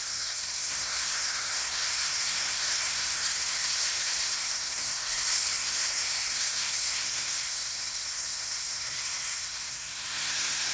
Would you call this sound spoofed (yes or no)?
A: yes